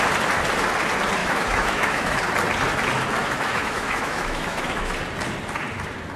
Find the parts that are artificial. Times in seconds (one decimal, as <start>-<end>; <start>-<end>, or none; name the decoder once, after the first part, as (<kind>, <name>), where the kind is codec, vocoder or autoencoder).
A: 1.2-2.2 (autoencoder, DAC-VAE); 3.2-4.9